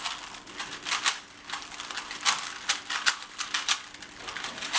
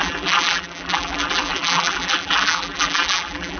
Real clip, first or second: first